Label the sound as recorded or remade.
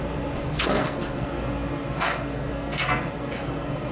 remade